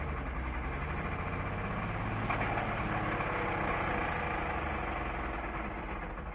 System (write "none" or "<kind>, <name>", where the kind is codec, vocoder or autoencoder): none